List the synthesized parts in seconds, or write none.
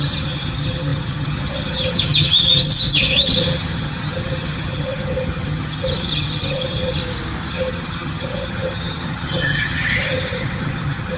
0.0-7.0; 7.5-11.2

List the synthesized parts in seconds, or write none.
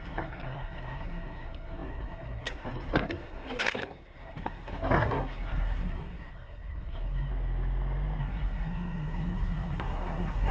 0.0-7.3; 8.2-10.5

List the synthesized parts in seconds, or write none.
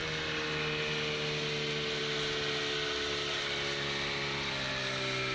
none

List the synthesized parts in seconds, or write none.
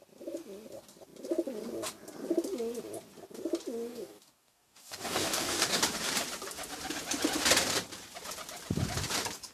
3.9-5.8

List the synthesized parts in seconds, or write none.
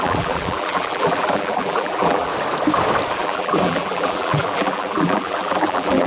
0.0-2.3; 3.1-6.1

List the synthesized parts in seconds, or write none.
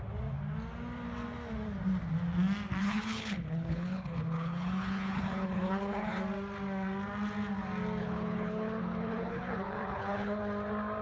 2.8-6.2; 8.0-10.4